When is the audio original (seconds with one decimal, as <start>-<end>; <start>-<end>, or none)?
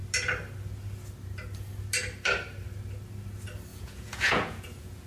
0.0-3.7